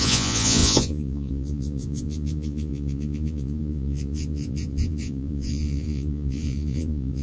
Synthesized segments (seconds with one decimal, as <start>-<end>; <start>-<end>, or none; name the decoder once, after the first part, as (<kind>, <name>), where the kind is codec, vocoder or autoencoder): 0.0-7.2 (vocoder, Vocos)